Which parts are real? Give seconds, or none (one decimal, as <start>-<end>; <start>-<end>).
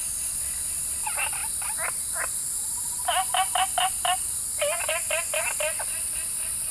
0.0-6.7